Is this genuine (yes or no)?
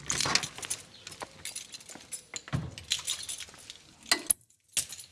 yes